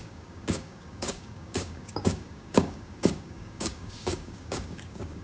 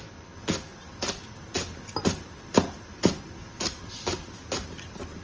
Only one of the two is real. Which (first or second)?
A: second